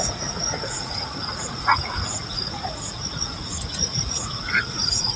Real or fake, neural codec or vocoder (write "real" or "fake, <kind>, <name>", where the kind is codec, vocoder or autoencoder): fake, vocoder, Vocos